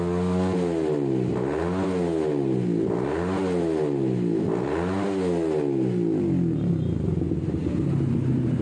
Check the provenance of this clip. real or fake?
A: real